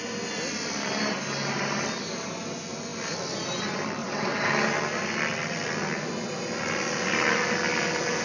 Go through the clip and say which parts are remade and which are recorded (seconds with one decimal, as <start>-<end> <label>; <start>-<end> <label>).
0.0-4.0 recorded; 4.0-4.5 remade; 4.5-8.2 recorded